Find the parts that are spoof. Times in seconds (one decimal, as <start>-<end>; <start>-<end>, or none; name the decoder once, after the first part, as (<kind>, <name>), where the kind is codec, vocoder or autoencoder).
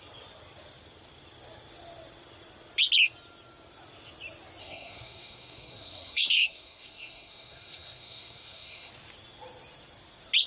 4.6-8.9 (codec, SNAC)